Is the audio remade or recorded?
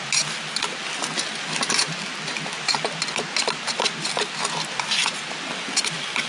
recorded